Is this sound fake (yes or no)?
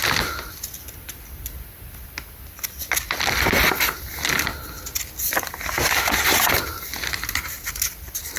no